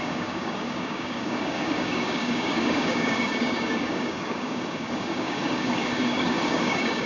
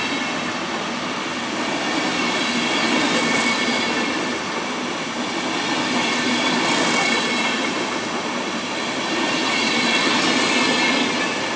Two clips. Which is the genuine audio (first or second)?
second